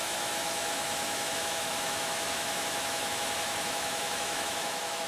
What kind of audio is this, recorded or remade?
remade